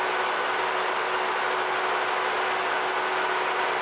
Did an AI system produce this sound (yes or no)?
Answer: no